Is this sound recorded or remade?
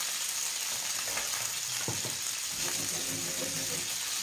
recorded